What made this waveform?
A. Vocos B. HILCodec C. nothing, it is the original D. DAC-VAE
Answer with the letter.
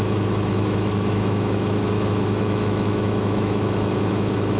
D